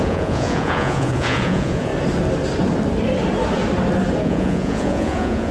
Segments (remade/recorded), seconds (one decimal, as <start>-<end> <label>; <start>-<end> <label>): 0.0-1.9 remade; 1.9-4.2 recorded; 4.2-5.5 remade